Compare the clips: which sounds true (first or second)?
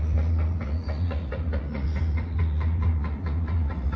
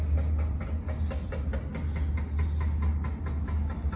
second